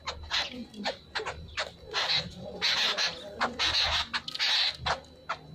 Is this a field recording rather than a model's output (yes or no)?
yes